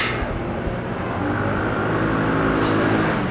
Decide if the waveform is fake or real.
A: real